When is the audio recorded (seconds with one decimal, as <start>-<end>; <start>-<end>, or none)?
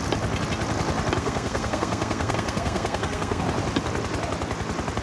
0.0-1.2; 3.4-5.0